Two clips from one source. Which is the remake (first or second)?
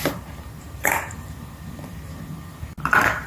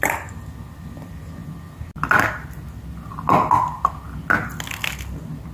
first